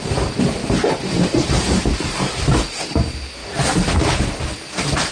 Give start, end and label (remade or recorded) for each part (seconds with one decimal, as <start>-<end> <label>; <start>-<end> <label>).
0.0-0.6 recorded; 0.6-2.4 remade; 2.4-3.4 recorded; 3.4-4.2 remade; 4.2-5.1 recorded